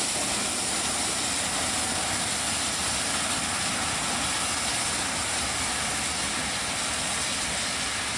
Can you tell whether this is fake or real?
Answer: real